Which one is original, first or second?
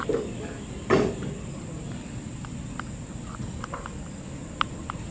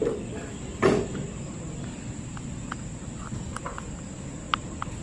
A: first